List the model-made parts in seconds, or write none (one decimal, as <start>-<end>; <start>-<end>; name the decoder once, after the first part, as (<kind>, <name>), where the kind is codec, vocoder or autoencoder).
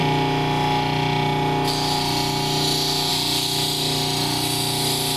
none